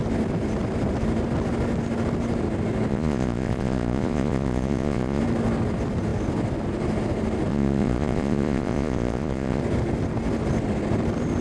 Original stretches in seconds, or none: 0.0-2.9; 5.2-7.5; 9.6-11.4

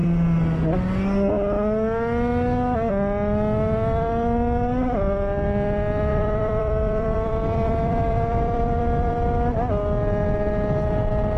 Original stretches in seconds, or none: 0.0-6.1; 9.1-11.4

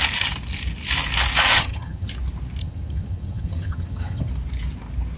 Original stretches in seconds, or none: 0.0-1.5; 2.1-2.6; 4.3-5.2

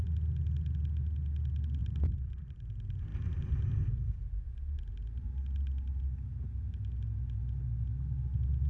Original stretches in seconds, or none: 0.0-1.8; 2.5-8.7

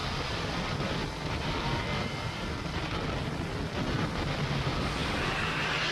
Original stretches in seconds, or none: 0.0-5.9

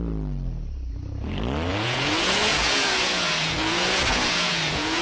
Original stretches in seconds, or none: 0.0-1.7

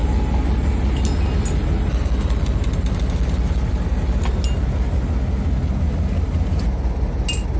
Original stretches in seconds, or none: 0.0-7.6